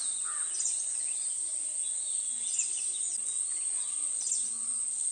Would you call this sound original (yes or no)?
yes